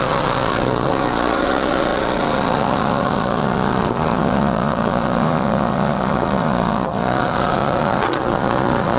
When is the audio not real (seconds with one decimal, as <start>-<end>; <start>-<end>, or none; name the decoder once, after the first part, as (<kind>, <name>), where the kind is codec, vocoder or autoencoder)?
0.0-9.0 (vocoder, Vocos)